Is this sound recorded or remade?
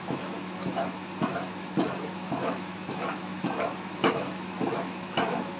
remade